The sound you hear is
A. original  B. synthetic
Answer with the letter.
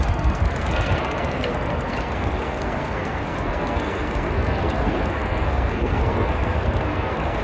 B